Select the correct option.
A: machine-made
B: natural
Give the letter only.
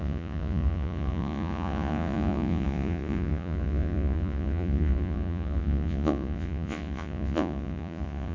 A